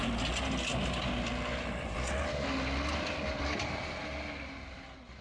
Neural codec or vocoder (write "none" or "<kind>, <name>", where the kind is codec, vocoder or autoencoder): none